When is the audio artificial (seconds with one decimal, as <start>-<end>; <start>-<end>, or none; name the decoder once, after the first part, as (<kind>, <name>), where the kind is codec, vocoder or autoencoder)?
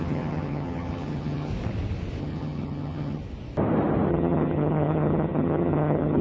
0.0-1.5 (vocoder, HiFi-GAN); 2.2-3.2; 4.1-6.2